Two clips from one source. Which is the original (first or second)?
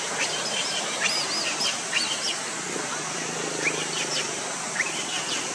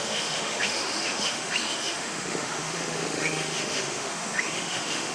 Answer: first